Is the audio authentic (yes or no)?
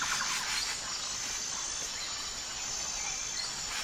yes